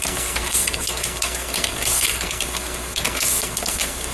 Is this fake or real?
fake